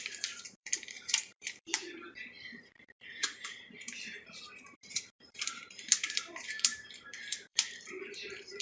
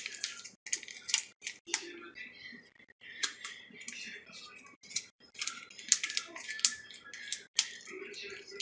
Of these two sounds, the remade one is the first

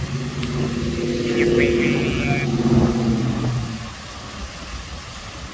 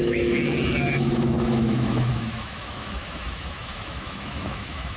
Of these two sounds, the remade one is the second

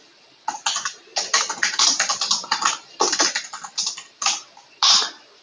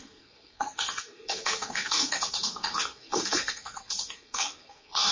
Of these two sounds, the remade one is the second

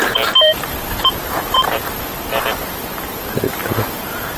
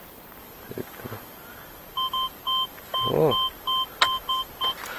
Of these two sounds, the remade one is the first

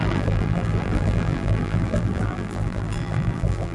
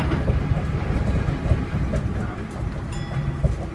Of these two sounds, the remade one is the first